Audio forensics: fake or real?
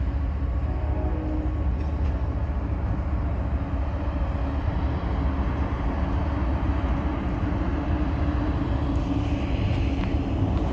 real